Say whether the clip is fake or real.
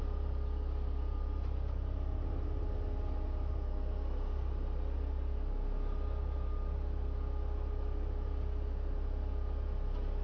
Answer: real